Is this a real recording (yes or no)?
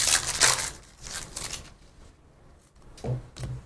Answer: yes